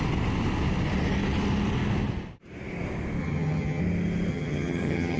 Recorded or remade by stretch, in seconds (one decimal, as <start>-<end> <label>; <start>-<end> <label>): 0.0-3.2 recorded; 3.2-3.8 remade; 3.8-4.3 recorded; 4.3-5.2 remade